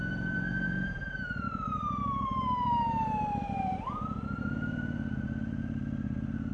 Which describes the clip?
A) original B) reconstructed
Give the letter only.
B